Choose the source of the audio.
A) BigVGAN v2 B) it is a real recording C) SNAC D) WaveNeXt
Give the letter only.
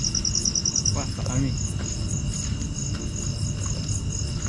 B